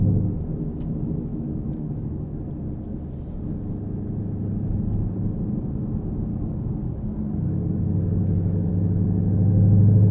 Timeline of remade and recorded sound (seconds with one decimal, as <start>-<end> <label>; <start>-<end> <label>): 0.0-1.3 recorded; 1.3-2.4 remade; 2.4-6.3 recorded; 6.3-8.7 remade; 8.7-10.1 recorded